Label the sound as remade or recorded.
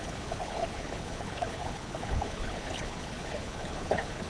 remade